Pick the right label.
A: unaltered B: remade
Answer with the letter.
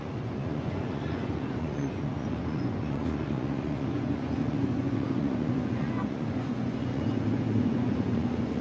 B